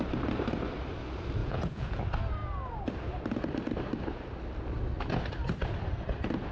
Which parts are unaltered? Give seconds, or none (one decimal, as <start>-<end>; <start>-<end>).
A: 0.0-1.4; 2.0-6.5